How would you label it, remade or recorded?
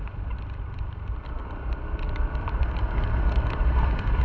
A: recorded